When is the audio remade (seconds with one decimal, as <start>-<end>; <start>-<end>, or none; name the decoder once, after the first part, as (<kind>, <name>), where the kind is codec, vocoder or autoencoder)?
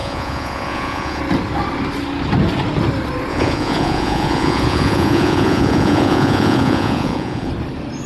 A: 0.0-1.2 (vocoder, Vocos); 3.3-7.5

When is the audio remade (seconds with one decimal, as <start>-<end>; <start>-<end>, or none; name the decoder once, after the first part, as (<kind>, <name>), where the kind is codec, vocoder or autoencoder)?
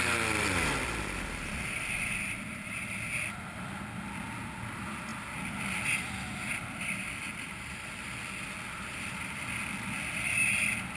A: none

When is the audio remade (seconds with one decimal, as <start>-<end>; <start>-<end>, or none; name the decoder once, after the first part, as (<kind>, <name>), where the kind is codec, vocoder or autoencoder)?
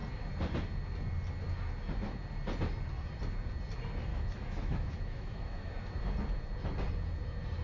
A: 4.1-5.7 (autoencoder, DAC-VAE)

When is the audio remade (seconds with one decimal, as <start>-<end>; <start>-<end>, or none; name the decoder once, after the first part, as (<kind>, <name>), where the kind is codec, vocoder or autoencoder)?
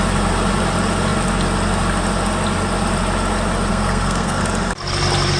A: 3.7-4.4 (codec, SNAC)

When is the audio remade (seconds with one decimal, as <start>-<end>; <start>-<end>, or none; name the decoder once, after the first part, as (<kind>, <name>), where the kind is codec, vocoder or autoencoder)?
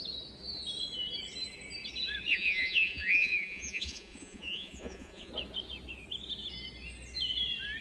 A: 2.3-5.3 (vocoder, Vocos)